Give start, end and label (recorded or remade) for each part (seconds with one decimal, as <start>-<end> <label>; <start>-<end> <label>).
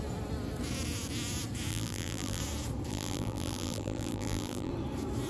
0.0-1.7 recorded; 1.7-2.4 remade; 2.4-2.9 recorded; 2.9-4.7 remade; 4.7-5.3 recorded